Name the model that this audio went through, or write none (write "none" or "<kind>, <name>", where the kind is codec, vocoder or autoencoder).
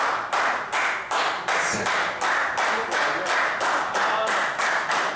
none